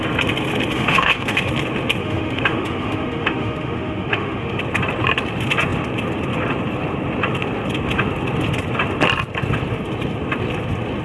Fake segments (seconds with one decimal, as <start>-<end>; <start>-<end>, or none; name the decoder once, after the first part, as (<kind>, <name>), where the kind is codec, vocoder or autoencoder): 0.7-1.5 (autoencoder, DAC-VAE); 2.0-4.6